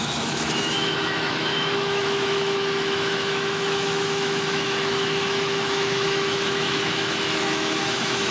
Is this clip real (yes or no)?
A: no